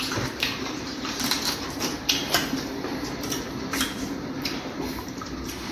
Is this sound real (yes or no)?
no